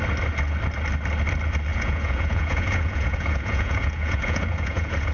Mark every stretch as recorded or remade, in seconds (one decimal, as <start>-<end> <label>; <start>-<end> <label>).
0.0-1.7 recorded; 1.7-5.1 remade